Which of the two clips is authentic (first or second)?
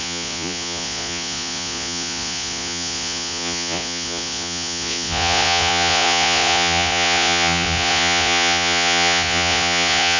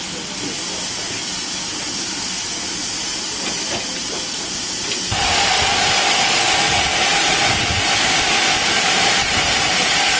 second